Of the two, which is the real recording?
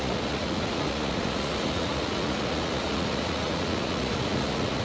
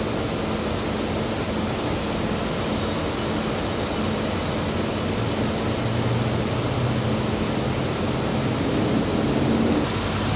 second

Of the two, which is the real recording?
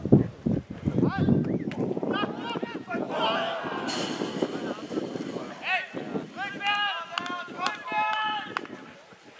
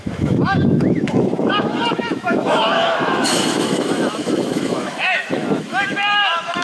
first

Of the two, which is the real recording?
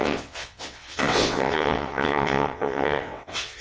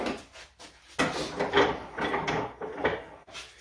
second